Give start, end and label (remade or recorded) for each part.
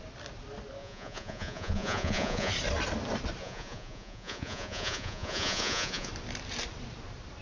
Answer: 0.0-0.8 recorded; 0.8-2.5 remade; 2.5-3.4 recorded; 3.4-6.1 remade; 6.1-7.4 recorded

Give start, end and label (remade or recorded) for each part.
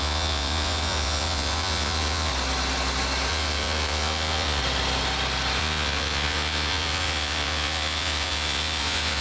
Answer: 0.0-2.3 remade; 2.3-3.3 recorded; 3.3-4.6 remade; 4.6-5.6 recorded; 5.6-9.2 remade